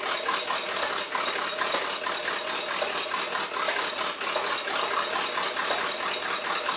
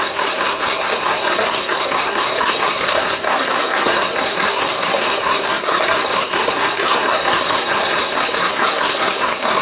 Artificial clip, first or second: second